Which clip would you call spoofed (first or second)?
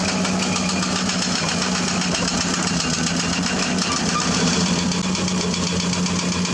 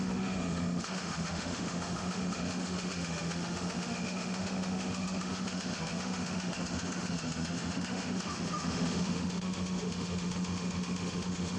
second